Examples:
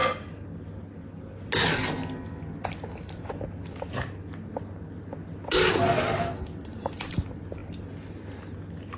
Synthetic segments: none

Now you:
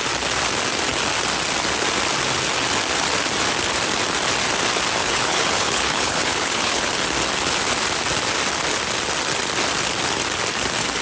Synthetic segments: 5.0-6.9 (codec, HILCodec)

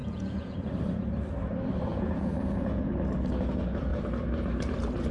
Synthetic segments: 0.0-0.7 (vocoder, Vocos); 1.9-2.9

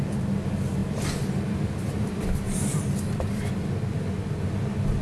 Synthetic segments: none

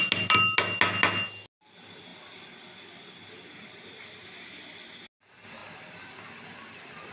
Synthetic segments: 5.6-7.1 (vocoder, BigVGAN v2)

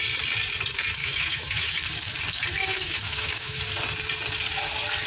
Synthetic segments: 1.0-1.7 (autoencoder, DAC-VAE); 2.6-3.6